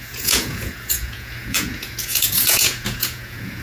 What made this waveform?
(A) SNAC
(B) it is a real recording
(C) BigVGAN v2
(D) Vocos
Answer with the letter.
D